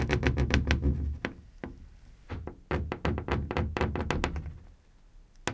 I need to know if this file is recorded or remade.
recorded